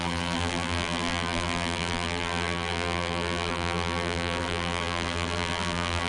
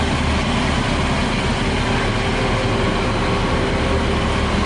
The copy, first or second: first